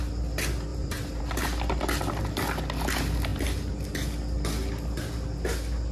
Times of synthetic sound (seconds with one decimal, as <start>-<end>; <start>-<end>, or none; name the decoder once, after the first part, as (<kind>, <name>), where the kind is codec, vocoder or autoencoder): 0.7-1.2 (vocoder, BigVGAN v2)